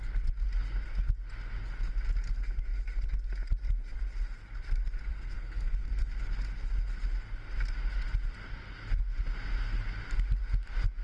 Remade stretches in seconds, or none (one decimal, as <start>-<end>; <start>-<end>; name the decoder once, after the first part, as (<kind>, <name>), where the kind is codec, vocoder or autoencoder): 5.1-6.1 (codec, SNAC)

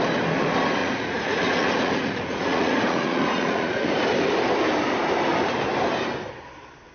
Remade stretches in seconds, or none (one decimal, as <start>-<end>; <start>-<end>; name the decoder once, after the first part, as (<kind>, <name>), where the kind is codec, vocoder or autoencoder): 0.8-3.9 (vocoder, Vocos)